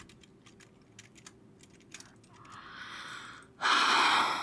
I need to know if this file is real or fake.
real